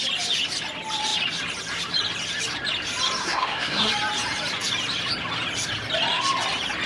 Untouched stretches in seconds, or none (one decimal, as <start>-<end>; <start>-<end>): 0.0-3.2; 3.9-6.9